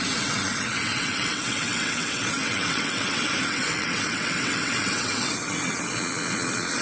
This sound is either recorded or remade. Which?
remade